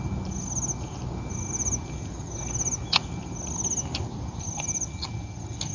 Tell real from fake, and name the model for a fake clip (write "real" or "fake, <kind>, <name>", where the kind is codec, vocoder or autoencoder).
real